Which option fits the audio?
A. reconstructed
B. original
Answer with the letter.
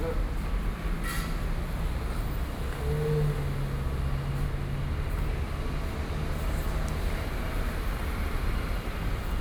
B